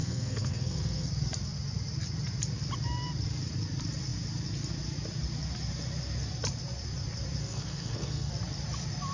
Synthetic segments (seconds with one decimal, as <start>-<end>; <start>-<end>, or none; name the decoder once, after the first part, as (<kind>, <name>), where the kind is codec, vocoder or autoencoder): 0.0-1.1 (codec, SNAC); 7.4-8.3